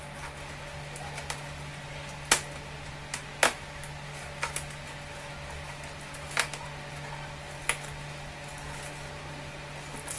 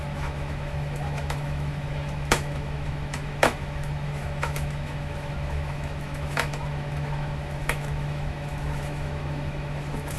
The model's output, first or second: second